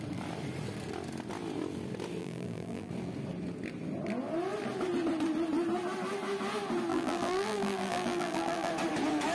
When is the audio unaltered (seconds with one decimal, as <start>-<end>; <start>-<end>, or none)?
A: 0.0-2.2; 2.9-6.9; 8.7-9.3